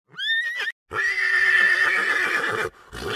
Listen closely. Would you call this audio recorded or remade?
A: recorded